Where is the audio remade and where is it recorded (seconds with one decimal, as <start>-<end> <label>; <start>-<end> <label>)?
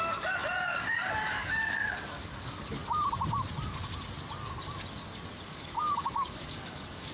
0.0-2.8 remade; 2.8-5.5 recorded; 5.5-7.1 remade